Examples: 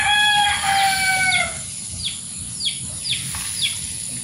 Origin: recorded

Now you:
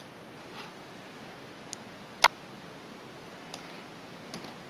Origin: recorded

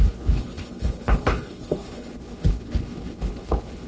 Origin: remade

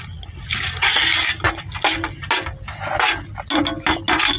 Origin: recorded